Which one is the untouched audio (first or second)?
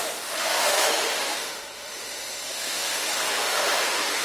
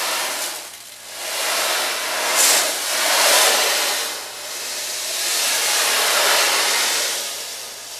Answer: second